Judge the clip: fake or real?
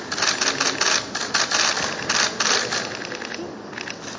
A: real